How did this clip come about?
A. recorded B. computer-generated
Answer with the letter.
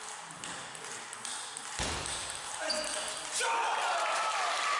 A